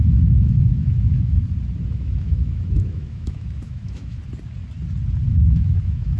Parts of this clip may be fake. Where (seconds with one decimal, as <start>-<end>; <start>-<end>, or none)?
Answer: 0.0-1.4; 1.9-4.2; 5.3-6.2